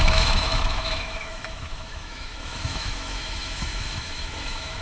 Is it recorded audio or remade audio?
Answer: remade